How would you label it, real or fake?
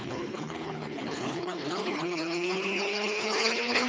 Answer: fake